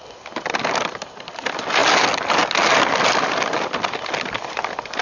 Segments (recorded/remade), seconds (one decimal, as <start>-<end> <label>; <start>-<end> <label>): 0.0-5.0 recorded